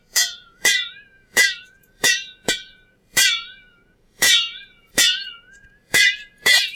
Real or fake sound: fake